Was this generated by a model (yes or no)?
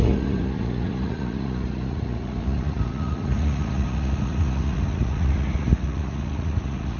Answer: yes